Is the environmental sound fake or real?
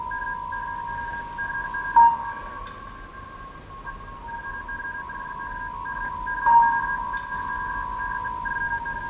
real